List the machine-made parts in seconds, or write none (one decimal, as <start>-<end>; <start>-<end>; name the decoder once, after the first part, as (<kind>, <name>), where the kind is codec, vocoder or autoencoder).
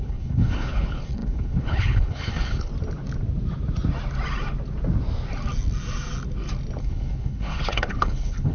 0.0-2.7 (codec, HILCodec); 6.8-8.5